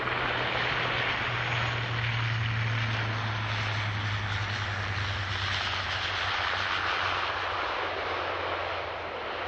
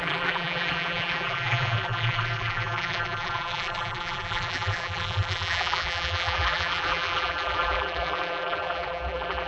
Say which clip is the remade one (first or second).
second